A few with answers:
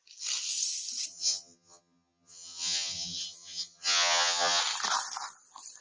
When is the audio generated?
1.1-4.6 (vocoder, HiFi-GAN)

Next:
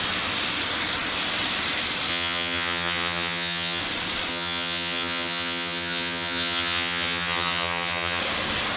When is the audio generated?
2.1-3.8 (vocoder, HiFi-GAN); 4.3-8.2

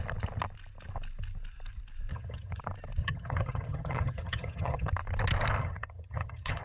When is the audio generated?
2.1-2.6 (vocoder, HiFi-GAN); 3.0-4.9; 5.6-6.6

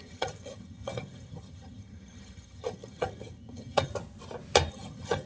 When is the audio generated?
0.0-3.9 (vocoder, HiFi-GAN); 4.7-5.3

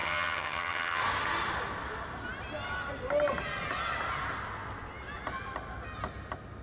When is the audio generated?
0.0-1.0 (vocoder, HiFi-GAN)

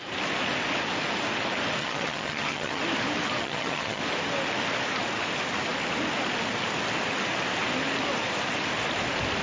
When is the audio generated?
1.8-2.8 (vocoder, HiFi-GAN); 3.4-4.0